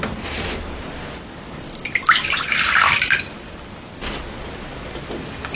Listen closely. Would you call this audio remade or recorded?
remade